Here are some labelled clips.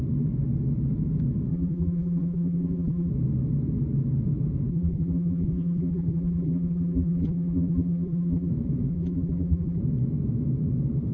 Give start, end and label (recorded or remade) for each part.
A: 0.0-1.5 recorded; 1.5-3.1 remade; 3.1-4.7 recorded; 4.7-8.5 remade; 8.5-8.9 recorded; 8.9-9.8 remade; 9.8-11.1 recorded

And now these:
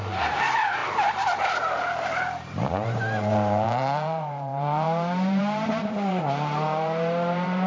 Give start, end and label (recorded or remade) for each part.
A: 0.0-7.7 remade

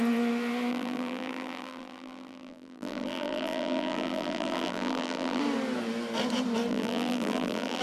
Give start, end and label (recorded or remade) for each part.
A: 0.0-0.7 recorded; 0.7-5.4 remade; 5.4-6.7 recorded; 6.7-7.8 remade

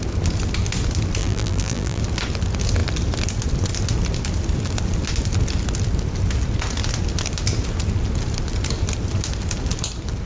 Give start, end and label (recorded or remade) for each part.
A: 0.0-1.2 recorded; 1.2-2.0 remade; 2.0-10.3 recorded

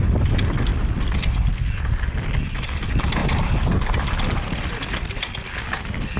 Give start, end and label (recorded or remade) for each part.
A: 0.0-3.2 recorded; 3.2-5.2 remade; 5.2-6.2 recorded

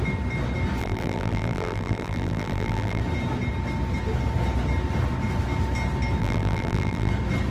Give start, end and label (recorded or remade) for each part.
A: 0.0-0.8 recorded; 0.8-3.0 remade; 3.0-6.2 recorded; 6.2-7.1 remade; 7.1-7.5 recorded

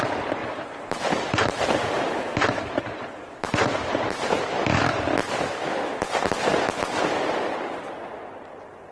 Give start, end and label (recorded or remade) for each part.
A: 0.0-0.4 recorded; 0.4-4.4 remade; 4.4-8.9 recorded